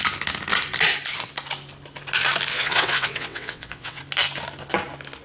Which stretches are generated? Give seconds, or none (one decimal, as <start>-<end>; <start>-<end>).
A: 2.5-4.0